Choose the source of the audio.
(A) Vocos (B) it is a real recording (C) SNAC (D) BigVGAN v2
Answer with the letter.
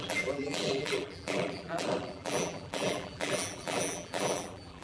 D